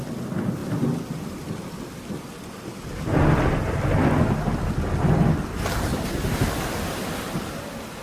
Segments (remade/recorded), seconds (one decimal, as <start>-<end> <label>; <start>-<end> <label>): 0.0-0.6 recorded; 0.6-3.5 remade; 3.5-8.0 recorded